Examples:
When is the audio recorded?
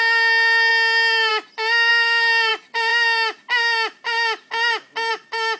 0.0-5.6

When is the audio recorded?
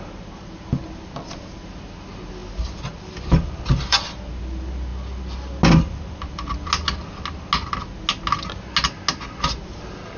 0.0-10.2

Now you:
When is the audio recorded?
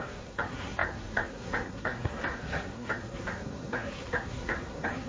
none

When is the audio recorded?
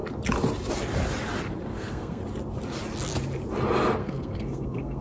0.0-1.7; 2.2-4.0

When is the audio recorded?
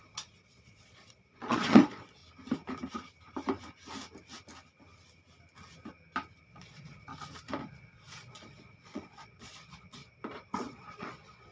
2.2-6.4; 7.1-7.7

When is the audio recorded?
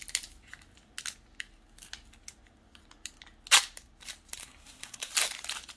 0.0-4.4; 5.1-5.8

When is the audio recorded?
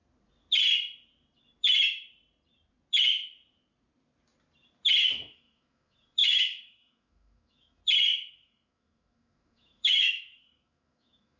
0.0-5.0; 7.8-8.3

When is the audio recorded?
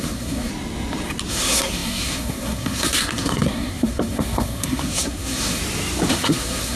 0.5-1.3; 5.6-6.1